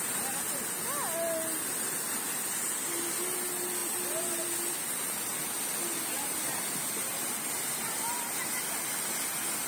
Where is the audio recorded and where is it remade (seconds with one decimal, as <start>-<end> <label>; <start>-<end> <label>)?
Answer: 0.0-9.7 recorded

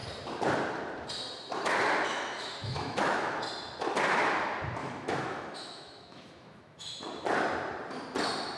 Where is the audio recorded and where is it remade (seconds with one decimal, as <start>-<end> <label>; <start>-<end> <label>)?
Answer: 0.0-2.1 recorded; 2.1-3.4 remade; 3.4-4.8 recorded; 4.8-7.0 remade; 7.0-8.6 recorded

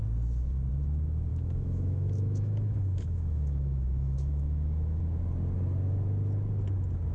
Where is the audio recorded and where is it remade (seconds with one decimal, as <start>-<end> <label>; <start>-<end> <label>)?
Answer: 0.0-1.3 recorded; 1.3-5.0 remade; 5.0-7.1 recorded

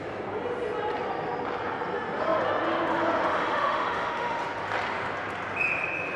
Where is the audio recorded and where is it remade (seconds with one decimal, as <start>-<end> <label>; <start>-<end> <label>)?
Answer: 0.0-3.3 recorded; 3.3-4.4 remade; 4.4-6.2 recorded

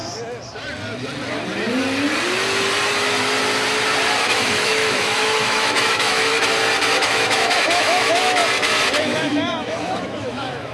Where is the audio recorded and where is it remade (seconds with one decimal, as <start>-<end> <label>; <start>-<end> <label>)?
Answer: 0.0-4.2 recorded; 4.2-6.3 remade; 6.3-7.0 recorded; 7.0-8.4 remade; 8.4-9.0 recorded; 9.0-10.7 remade

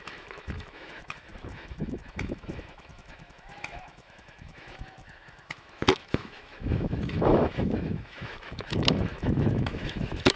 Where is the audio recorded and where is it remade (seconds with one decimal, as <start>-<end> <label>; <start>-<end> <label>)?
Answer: 0.0-10.4 remade